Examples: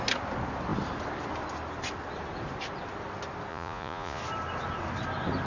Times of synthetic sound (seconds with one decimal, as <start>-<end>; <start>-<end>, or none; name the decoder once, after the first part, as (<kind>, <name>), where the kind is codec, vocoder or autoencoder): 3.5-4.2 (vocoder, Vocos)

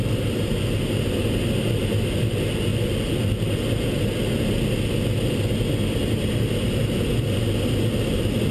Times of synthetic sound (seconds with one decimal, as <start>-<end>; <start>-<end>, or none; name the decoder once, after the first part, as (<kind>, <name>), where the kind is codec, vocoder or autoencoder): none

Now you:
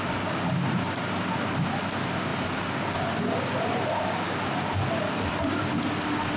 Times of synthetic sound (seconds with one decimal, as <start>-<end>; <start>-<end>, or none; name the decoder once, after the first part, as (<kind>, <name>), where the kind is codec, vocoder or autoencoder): none

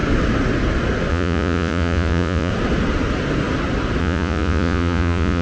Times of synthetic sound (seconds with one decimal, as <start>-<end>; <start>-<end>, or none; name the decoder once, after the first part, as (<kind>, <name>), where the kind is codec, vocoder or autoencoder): 1.1-2.5 (vocoder, Vocos); 4.0-5.4

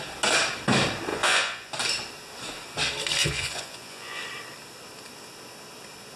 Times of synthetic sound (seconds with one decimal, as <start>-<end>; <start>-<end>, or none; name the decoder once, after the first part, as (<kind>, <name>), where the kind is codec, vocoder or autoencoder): 1.1-1.7 (vocoder, Vocos); 3.2-4.2

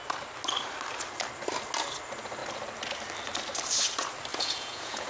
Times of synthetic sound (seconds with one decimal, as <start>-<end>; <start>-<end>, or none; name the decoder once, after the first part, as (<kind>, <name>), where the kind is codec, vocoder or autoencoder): 4.3-5.1 (vocoder, Vocos)